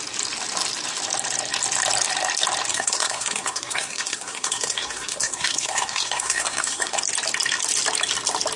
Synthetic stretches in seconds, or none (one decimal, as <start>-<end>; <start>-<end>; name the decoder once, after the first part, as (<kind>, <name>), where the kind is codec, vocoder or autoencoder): 2.7-7.0 (codec, SNAC)